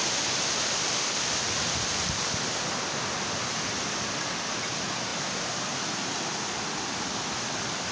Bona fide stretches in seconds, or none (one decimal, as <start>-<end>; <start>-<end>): 0.0-5.1; 5.7-7.9